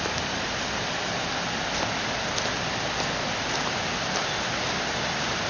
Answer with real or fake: real